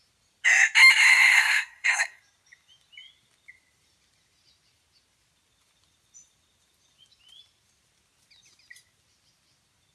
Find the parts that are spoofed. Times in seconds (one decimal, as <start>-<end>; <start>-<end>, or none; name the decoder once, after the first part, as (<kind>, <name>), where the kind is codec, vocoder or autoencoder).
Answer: 1.1-2.2 (codec, SNAC)